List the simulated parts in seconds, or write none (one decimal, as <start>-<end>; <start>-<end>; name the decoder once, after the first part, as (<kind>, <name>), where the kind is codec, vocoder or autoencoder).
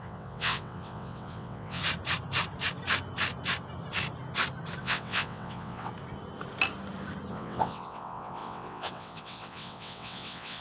0.0-1.8 (vocoder, WaveNeXt); 4.8-5.9; 7.3-10.6